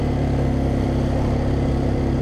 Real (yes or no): yes